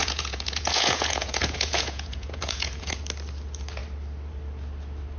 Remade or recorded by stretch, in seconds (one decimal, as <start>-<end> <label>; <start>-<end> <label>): 0.0-3.0 remade; 3.0-5.2 recorded